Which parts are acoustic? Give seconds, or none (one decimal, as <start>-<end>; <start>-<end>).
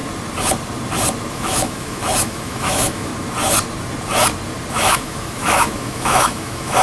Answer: 0.0-1.3; 3.1-4.7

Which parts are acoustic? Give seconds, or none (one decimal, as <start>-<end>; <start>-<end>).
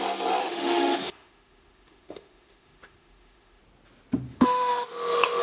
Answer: 0.0-0.4; 3.6-4.3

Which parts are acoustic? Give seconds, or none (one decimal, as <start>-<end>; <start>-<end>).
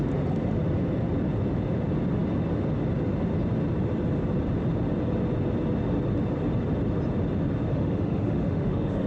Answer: 0.0-7.7